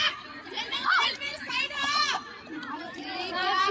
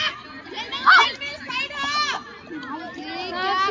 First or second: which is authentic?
second